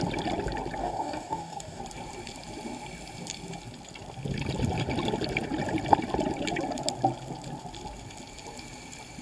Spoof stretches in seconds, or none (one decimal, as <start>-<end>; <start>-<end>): 0.8-1.8